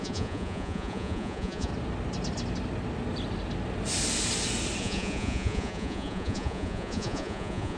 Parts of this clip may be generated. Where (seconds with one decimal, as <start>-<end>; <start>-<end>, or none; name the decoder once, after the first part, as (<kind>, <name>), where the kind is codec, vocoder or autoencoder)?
0.0-1.7 (vocoder, Vocos); 4.8-7.8